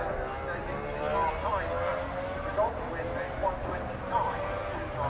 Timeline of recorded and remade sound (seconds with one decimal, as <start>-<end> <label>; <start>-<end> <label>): 0.0-5.1 recorded